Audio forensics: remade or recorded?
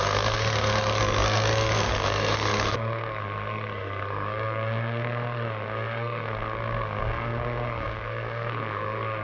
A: remade